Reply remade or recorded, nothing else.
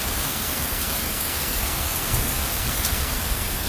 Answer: remade